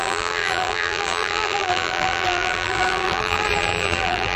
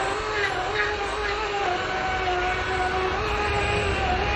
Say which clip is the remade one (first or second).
first